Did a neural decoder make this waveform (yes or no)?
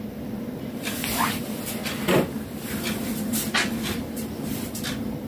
yes